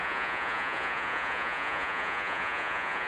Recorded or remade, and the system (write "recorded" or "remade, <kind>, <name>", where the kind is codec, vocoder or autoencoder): remade, vocoder, Vocos